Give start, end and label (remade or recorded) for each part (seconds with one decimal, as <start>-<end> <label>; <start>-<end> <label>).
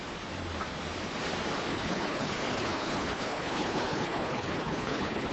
0.0-1.7 recorded; 1.7-5.3 remade